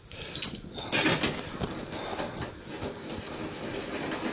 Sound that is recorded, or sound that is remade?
recorded